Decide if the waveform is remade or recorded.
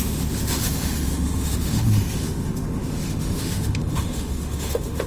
remade